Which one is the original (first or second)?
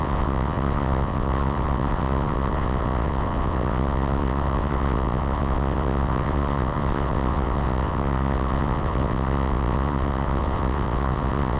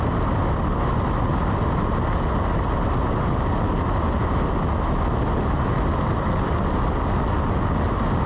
second